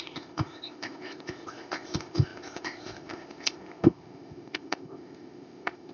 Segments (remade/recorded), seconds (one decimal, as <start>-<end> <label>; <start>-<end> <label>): 0.0-5.9 remade